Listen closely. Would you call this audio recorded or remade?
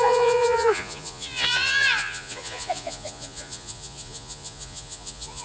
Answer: remade